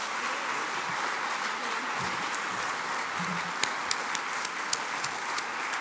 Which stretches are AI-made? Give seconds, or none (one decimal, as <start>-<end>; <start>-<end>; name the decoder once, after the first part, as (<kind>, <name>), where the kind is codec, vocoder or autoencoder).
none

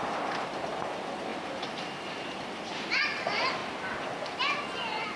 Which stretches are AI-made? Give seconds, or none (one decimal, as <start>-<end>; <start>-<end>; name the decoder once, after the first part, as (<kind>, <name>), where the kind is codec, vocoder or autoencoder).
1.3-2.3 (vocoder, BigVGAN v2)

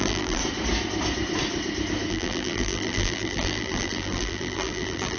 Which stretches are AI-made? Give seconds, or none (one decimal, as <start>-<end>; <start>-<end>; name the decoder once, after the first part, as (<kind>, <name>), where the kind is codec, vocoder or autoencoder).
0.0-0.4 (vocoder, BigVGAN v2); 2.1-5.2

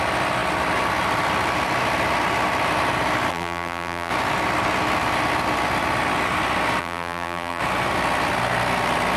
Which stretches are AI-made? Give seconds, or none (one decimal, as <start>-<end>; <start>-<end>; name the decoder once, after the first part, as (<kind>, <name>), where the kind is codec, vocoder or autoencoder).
3.3-4.1 (vocoder, BigVGAN v2); 6.8-7.6